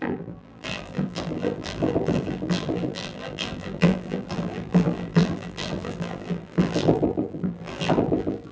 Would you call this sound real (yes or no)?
no